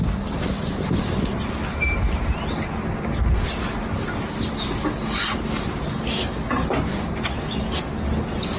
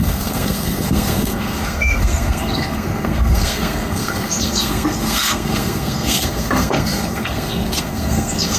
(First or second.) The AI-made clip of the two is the second